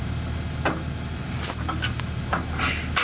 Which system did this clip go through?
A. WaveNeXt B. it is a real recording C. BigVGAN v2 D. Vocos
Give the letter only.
B